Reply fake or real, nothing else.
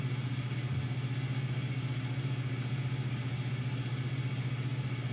real